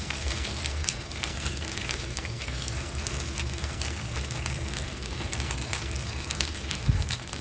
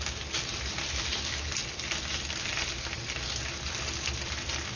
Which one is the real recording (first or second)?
second